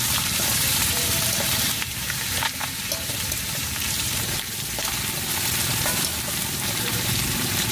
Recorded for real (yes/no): no